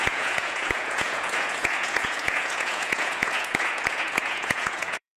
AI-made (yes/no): yes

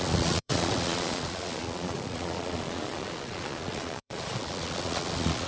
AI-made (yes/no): yes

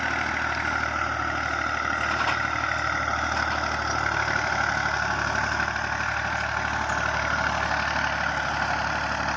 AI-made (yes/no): no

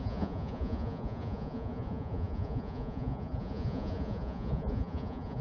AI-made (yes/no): yes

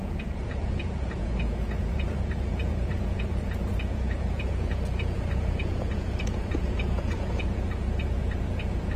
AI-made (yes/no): yes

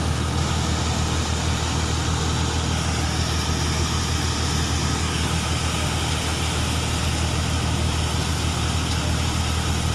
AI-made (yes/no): no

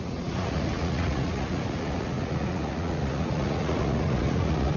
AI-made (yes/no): yes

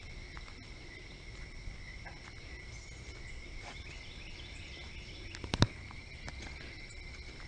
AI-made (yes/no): no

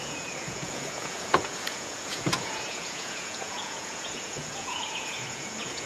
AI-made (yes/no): yes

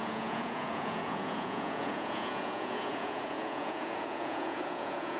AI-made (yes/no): yes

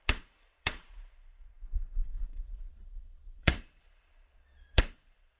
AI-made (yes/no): yes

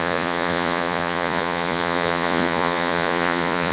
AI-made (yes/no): yes